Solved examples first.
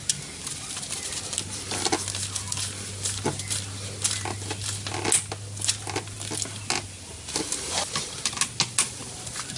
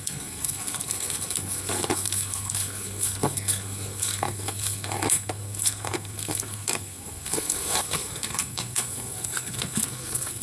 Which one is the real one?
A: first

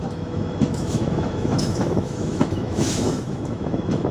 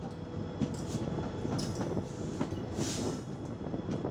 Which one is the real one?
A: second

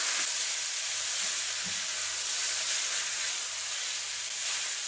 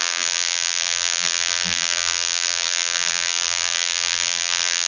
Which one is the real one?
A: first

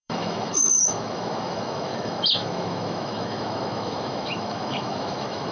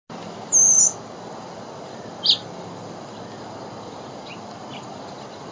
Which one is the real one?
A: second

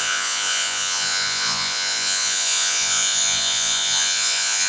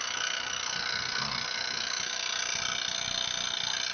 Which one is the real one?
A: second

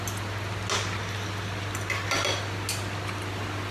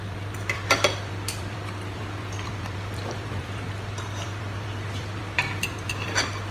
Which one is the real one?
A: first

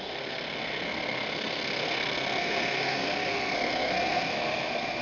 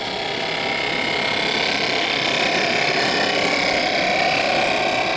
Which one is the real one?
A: second